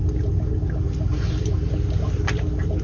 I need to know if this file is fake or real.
real